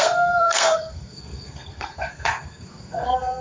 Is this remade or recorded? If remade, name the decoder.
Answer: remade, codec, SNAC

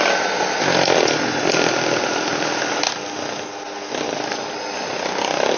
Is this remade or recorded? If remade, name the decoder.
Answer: recorded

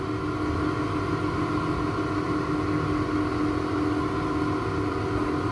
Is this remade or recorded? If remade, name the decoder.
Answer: recorded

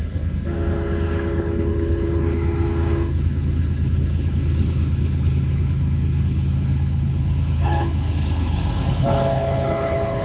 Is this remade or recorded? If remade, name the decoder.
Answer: remade, codec, HILCodec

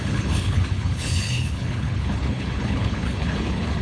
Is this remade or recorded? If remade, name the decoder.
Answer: remade, codec, HILCodec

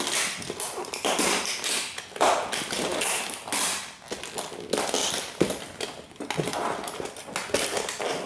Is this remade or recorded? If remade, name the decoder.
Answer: recorded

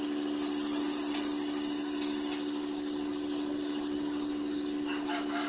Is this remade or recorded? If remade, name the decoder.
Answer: recorded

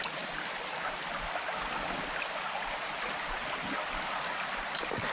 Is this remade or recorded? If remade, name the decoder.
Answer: recorded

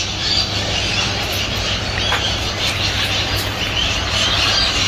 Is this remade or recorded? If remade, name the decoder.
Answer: remade, vocoder, BigVGAN v2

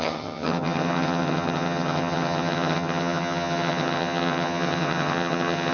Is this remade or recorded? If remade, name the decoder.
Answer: remade, vocoder, HiFi-GAN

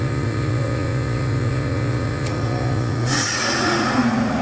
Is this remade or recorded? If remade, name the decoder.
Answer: remade, vocoder, Vocos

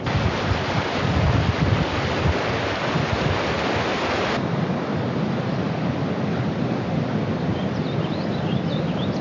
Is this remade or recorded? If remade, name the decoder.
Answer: remade, vocoder, BigVGAN v2